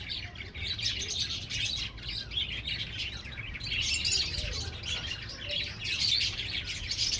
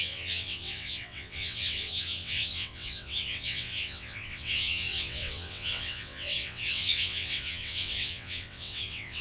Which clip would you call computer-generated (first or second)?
second